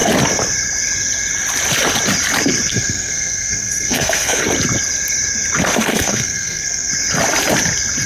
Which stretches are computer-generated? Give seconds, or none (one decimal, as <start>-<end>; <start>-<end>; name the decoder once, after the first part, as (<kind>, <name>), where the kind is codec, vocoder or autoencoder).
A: 2.7-4.4 (codec, SNAC); 5.9-6.9

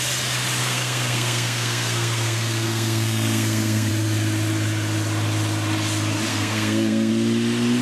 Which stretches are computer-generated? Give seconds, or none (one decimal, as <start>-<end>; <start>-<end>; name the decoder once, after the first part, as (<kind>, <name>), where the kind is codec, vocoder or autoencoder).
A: 0.6-3.9 (codec, SNAC); 6.3-7.1

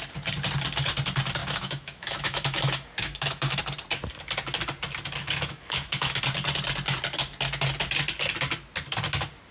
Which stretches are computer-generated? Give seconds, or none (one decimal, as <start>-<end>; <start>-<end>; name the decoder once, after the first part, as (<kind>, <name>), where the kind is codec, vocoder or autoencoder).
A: 1.4-3.6 (autoencoder, DAC-VAE); 5.2-6.2

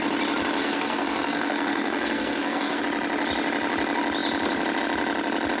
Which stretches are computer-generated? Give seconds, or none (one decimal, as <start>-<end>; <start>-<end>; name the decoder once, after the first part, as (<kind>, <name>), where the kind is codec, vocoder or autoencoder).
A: 0.6-2.8 (codec, SNAC)

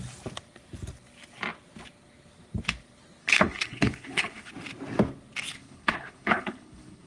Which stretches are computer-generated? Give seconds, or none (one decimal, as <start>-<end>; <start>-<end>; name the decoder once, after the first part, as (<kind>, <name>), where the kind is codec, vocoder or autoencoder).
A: 3.2-4.5 (codec, HILCodec); 5.5-7.1

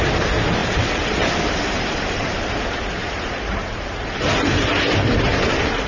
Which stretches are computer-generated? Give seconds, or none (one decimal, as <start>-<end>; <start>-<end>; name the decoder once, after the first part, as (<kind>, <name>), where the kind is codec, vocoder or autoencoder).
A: 0.6-2.5 (vocoder, BigVGAN v2); 3.0-5.9